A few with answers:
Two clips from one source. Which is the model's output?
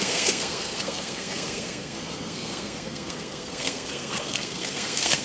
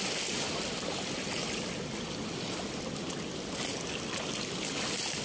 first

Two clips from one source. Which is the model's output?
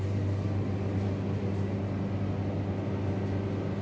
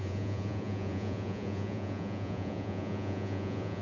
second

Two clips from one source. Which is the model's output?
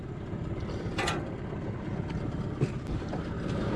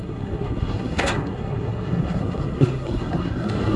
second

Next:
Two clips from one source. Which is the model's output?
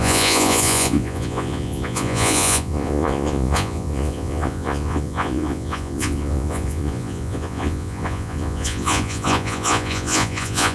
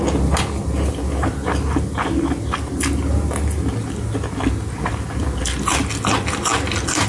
first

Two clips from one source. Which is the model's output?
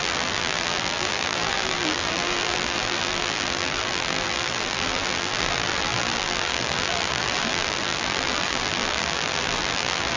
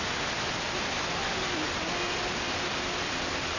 first